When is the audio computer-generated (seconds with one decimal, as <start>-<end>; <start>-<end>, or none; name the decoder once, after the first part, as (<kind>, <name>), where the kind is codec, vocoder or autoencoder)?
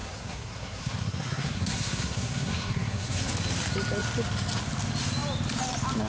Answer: 0.0-3.3 (codec, SNAC)